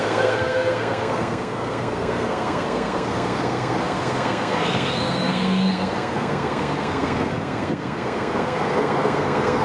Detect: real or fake fake